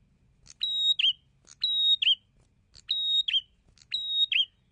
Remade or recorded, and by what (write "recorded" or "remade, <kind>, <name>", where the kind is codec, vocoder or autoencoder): recorded